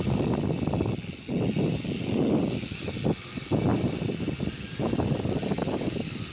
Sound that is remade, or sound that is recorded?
recorded